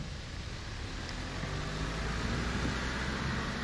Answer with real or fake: real